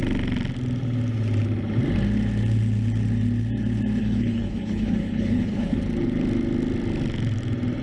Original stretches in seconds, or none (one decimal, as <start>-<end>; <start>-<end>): 0.0-4.0; 5.8-7.8